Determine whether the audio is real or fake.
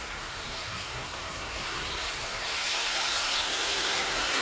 fake